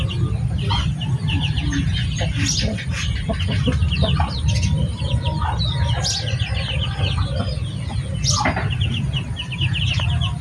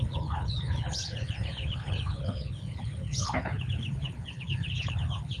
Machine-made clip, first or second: second